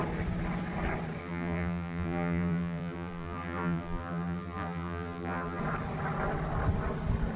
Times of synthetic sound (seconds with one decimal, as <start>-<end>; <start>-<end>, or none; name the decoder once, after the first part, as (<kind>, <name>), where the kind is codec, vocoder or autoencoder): 1.2-5.6 (vocoder, BigVGAN v2)